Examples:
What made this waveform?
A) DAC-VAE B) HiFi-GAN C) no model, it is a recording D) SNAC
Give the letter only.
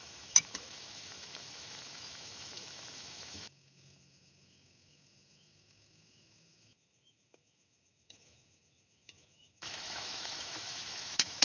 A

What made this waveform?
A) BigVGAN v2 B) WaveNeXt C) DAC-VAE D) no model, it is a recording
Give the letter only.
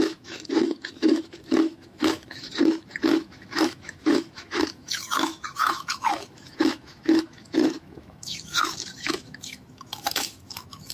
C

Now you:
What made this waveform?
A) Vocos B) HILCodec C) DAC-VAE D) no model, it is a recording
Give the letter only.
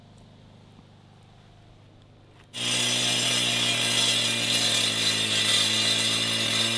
D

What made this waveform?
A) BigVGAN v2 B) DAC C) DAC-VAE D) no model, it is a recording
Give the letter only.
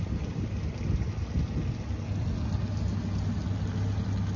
D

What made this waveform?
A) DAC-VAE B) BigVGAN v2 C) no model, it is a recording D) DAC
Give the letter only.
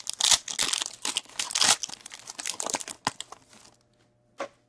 C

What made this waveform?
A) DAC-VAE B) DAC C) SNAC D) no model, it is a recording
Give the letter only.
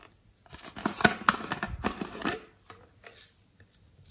D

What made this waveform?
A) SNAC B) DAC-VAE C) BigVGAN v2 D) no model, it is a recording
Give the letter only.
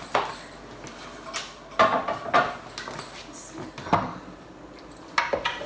D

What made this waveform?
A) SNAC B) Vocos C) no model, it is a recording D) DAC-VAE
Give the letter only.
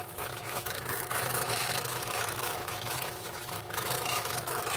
D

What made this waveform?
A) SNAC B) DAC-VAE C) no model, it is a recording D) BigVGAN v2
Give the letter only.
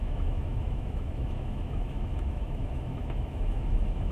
B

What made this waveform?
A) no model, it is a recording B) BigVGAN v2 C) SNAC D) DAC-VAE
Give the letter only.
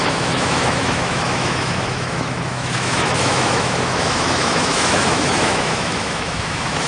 D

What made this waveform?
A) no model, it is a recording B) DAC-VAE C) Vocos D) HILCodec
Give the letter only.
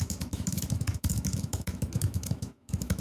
B